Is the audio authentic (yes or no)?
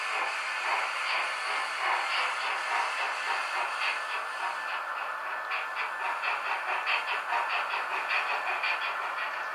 yes